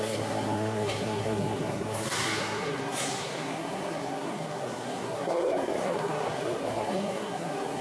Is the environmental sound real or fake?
fake